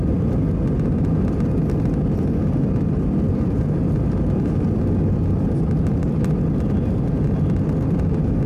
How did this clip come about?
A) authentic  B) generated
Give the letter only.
A